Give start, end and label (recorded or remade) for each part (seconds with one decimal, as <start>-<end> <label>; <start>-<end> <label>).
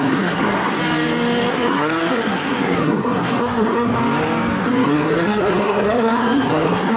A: 0.0-0.8 remade; 0.8-1.5 recorded; 1.5-3.9 remade; 3.9-4.6 recorded; 4.6-7.0 remade